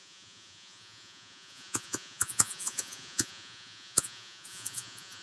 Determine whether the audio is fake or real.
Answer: fake